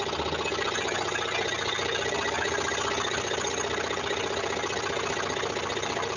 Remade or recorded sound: recorded